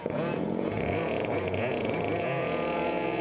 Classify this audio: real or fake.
fake